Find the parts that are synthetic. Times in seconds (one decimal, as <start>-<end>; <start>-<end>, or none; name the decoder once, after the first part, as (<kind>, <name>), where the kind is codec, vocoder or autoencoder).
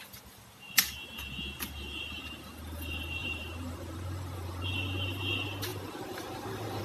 3.2-4.6 (vocoder, BigVGAN v2); 5.7-6.8